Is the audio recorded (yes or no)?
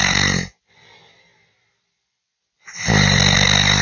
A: yes